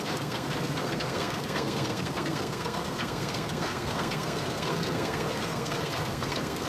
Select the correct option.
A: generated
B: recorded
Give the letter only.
A